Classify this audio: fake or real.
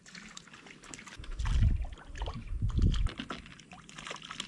real